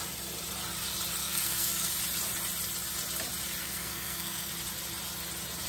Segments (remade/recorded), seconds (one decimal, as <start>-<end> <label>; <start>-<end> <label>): 0.0-1.2 recorded; 1.2-1.9 remade; 1.9-3.6 recorded; 3.6-4.5 remade; 4.5-5.7 recorded